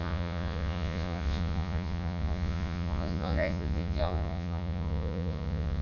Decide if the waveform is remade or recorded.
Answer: remade